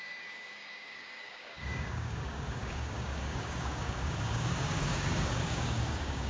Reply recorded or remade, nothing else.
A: remade